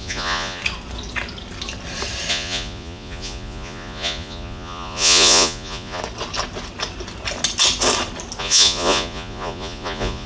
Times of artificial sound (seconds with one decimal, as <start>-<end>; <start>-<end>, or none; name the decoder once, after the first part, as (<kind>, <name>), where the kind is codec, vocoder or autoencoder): 0.0-0.6 (vocoder, Vocos); 2.3-6.0; 8.4-10.3